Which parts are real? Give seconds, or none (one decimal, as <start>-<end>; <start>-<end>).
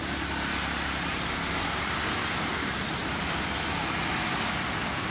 0.0-5.1